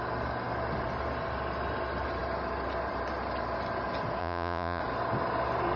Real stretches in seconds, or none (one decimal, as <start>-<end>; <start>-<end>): 0.0-4.2; 4.8-5.8